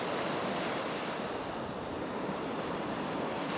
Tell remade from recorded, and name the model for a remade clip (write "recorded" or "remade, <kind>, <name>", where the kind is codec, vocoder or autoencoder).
recorded